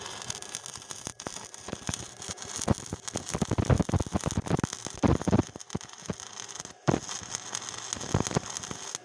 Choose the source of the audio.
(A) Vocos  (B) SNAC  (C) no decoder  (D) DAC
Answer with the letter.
C